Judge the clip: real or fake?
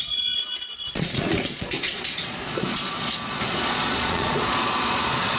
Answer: fake